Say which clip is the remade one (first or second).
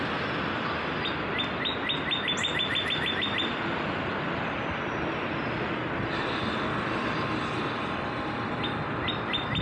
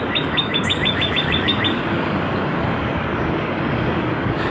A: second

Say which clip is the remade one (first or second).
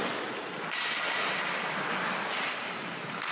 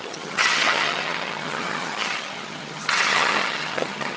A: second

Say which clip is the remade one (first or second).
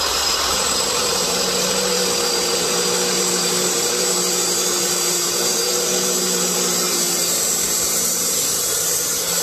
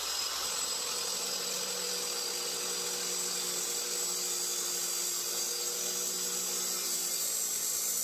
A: first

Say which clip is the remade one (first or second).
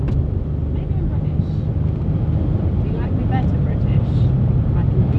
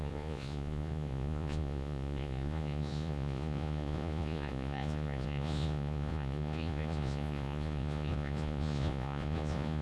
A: second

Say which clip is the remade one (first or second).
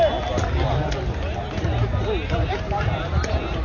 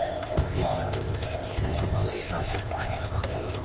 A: second